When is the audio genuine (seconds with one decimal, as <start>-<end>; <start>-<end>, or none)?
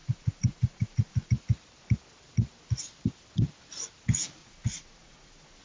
1.3-4.4